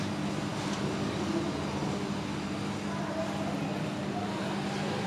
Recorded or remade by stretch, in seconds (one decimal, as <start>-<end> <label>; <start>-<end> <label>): 0.0-5.1 recorded